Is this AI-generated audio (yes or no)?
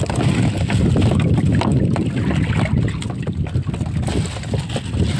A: no